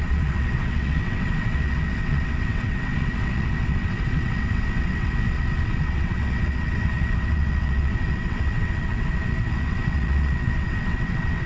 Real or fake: fake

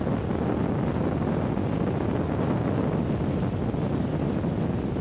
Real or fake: real